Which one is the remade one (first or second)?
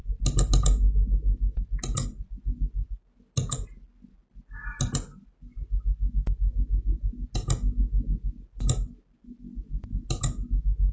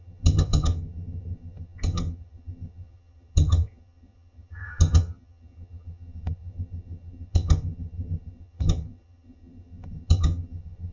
second